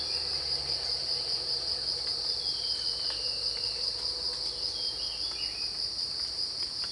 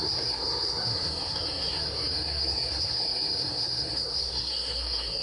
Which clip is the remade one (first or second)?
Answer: second